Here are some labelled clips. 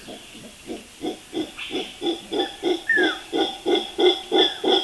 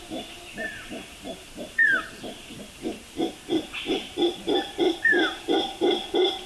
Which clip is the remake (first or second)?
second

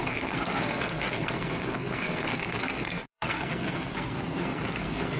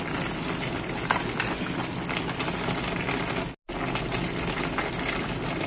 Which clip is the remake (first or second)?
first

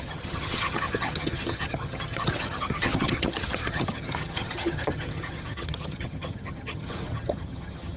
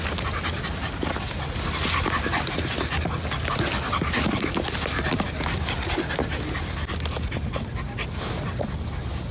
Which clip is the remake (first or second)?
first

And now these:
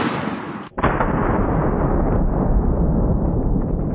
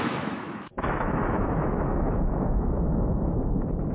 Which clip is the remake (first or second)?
second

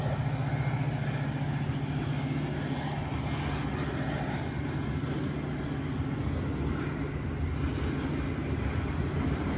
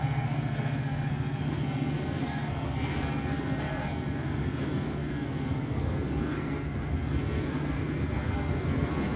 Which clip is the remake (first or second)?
second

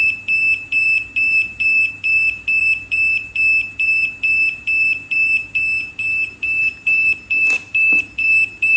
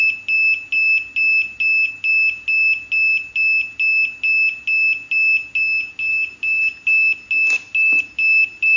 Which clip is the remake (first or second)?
first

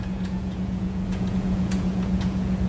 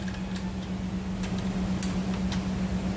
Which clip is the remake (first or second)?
first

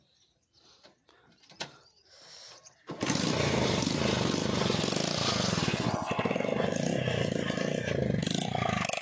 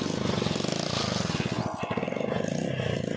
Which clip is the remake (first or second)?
first